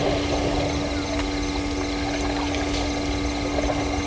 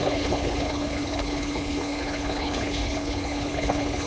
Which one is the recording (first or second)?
first